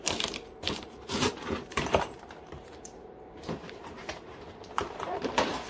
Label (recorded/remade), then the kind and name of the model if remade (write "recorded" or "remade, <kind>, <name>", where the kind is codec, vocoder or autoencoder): remade, vocoder, BigVGAN v2